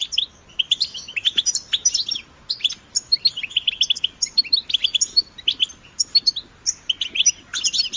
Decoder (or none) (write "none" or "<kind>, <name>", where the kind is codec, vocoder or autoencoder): none